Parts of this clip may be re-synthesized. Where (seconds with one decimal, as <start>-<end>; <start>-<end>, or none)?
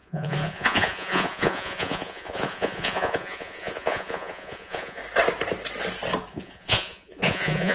0.0-5.0; 6.3-7.7